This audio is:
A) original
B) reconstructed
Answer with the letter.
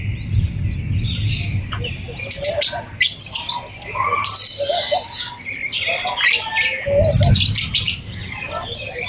A